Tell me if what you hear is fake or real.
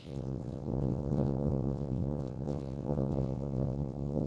fake